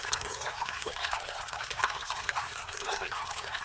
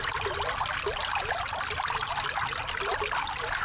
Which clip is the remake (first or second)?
first